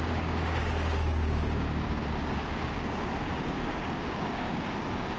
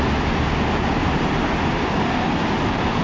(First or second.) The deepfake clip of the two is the first